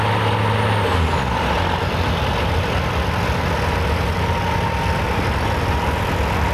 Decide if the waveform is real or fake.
real